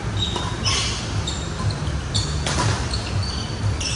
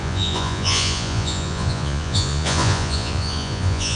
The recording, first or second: first